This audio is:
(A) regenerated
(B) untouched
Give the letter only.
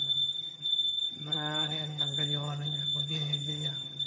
A